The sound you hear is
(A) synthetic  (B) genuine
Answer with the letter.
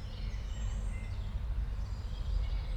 B